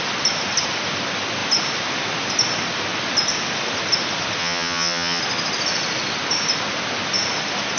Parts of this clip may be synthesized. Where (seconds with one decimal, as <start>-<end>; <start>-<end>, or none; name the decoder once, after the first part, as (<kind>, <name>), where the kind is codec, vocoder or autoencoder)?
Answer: 4.4-5.2 (vocoder, HiFi-GAN)